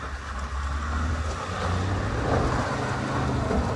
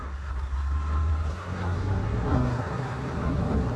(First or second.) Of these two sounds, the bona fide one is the first